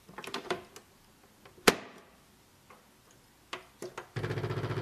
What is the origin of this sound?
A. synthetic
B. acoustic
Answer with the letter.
B